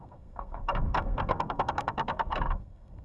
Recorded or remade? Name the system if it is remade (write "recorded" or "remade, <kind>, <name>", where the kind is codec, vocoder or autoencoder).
remade, codec, SNAC